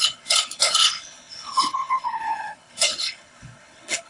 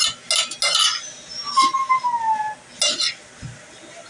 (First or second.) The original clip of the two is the second